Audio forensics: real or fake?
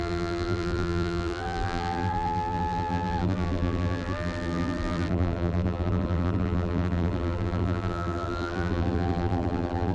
fake